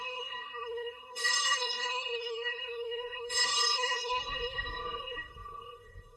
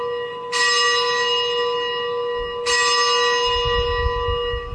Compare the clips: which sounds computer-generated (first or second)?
first